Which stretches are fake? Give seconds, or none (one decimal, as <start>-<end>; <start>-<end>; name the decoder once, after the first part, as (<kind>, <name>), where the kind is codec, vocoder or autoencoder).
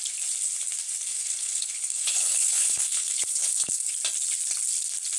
1.1-3.9 (codec, HILCodec)